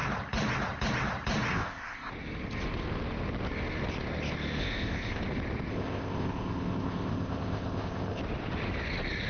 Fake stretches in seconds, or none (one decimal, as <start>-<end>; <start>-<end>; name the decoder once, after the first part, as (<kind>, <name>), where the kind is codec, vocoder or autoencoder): 1.5-2.1 (codec, ZipCodec); 4.6-5.2; 5.7-8.2